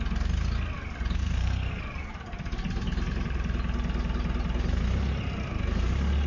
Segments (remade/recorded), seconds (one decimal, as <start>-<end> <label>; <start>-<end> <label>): 0.0-1.2 recorded; 1.2-1.8 remade; 1.8-6.3 recorded